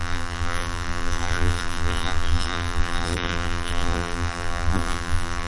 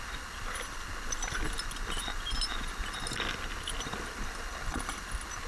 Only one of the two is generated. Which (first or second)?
first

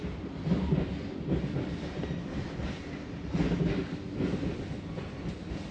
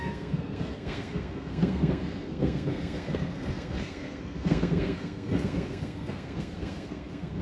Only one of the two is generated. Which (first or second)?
second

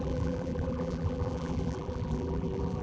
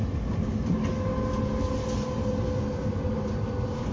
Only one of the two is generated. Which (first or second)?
first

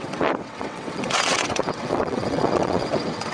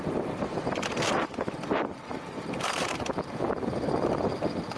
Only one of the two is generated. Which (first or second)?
first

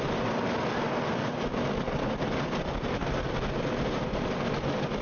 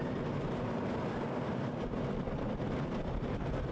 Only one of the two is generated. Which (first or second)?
second